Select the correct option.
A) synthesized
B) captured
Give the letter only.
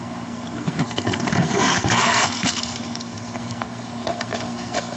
A